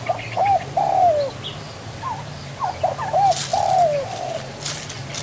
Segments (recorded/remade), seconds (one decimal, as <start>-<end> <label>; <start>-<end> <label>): 0.0-5.2 recorded